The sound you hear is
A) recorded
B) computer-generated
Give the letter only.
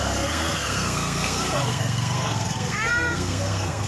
B